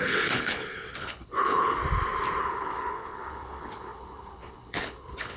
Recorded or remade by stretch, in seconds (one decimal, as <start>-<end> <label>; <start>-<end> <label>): 0.0-1.8 remade; 1.8-2.4 recorded; 2.4-5.4 remade